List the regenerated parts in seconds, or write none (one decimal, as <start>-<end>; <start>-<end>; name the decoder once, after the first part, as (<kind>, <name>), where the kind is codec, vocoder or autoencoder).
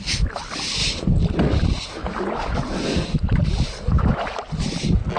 none